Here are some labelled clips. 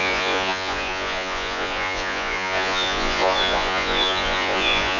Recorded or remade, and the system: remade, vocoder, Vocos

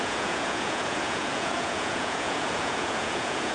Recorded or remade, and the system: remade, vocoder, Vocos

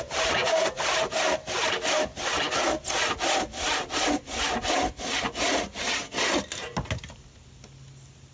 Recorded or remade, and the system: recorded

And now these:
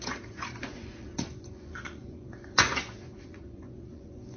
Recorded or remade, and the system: remade, vocoder, Vocos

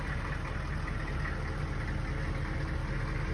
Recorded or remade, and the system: recorded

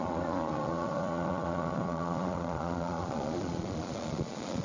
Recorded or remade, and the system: remade, vocoder, Vocos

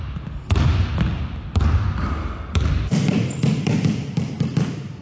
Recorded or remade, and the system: recorded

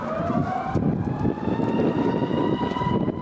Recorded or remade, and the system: recorded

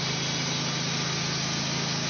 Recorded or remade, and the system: recorded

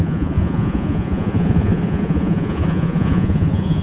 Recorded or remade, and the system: remade, vocoder, Vocos